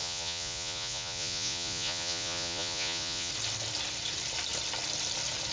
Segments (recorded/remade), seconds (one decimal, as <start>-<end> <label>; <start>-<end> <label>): 0.0-3.3 remade; 3.3-5.5 recorded